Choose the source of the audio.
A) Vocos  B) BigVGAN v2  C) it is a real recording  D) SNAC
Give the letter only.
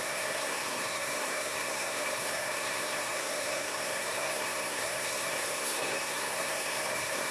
D